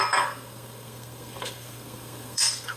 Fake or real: fake